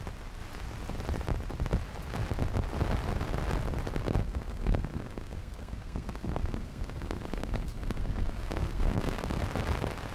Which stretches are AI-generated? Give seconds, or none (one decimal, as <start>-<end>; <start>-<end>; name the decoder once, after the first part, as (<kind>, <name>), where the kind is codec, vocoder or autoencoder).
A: 4.2-9.4 (codec, SNAC)